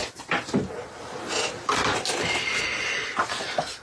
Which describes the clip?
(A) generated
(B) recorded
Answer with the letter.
B